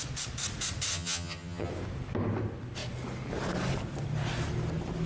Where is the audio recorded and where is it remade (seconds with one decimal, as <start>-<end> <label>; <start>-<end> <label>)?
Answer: 0.0-0.9 recorded; 0.9-1.7 remade; 1.7-5.1 recorded